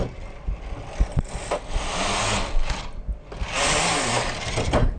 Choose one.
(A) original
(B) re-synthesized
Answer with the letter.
A